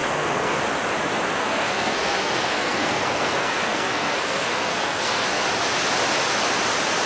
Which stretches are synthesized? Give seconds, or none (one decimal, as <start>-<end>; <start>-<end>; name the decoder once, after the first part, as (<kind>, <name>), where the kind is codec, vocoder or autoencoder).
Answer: 0.0-0.6 (codec, SNAC); 1.4-5.4